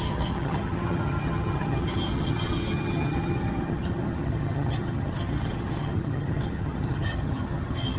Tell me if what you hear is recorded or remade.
remade